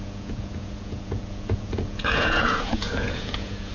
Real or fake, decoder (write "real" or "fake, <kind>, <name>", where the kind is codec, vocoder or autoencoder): fake, vocoder, Vocos